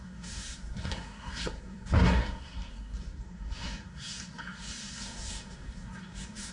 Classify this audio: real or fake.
fake